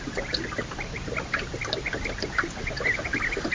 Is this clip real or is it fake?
real